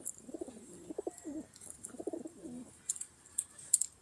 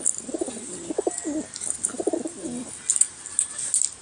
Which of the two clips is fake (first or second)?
first